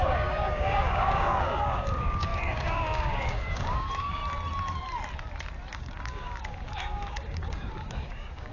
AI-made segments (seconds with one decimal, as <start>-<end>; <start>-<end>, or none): 0.0-4.2; 5.7-8.5